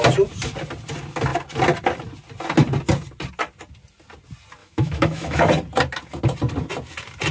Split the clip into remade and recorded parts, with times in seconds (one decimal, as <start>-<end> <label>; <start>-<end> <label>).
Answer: 0.0-4.6 recorded; 4.6-5.5 remade; 5.5-7.3 recorded